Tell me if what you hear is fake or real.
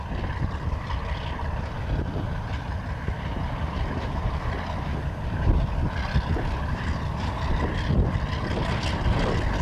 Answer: real